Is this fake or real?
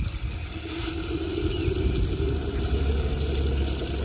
real